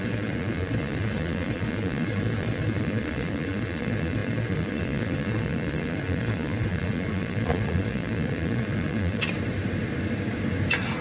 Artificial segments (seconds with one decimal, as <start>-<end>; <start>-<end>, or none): 0.0-9.3

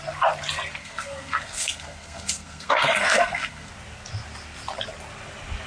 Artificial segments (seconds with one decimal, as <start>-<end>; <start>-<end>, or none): 0.8-3.7

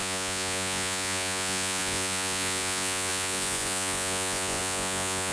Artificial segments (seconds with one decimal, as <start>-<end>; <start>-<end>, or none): 0.0-5.3